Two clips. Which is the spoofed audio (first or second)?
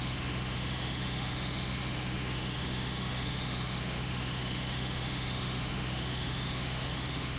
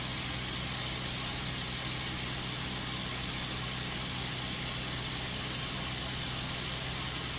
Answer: first